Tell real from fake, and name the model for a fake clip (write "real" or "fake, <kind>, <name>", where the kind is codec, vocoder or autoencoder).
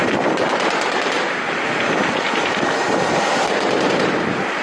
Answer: fake, vocoder, BigVGAN v2